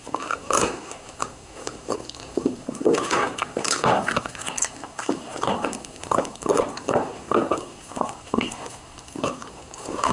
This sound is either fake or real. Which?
fake